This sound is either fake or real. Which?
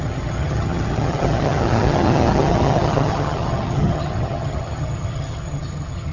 fake